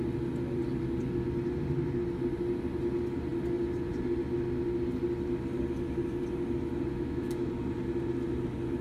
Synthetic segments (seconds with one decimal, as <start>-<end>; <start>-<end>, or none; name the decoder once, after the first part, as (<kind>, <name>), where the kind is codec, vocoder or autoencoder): 6.9-7.5 (autoencoder, DAC-VAE)